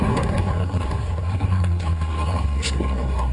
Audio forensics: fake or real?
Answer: fake